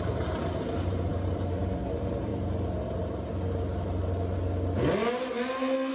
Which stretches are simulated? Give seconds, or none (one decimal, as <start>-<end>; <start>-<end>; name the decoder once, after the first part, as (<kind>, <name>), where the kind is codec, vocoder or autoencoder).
0.0-2.3 (vocoder, BigVGAN v2)